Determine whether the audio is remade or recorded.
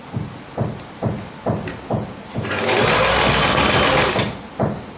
recorded